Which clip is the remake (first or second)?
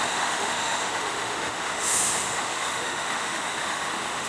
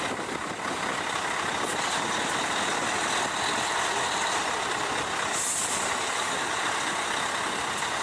first